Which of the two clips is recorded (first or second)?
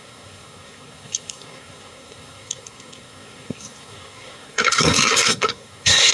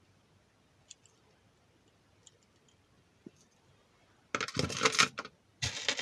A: second